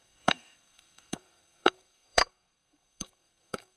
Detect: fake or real fake